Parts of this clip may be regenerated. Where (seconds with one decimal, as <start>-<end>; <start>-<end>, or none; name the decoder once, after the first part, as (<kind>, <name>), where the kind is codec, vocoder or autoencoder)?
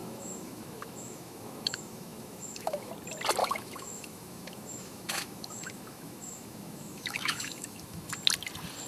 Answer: 0.0-2.9 (autoencoder, DAC-VAE); 3.4-8.1